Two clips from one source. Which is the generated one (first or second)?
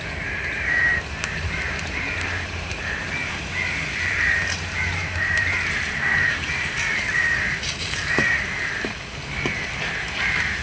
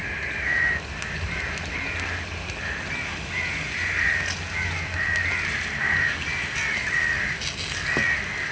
first